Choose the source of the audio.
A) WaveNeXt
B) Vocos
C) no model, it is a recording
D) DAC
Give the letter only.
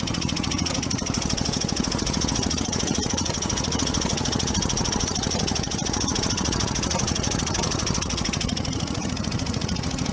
B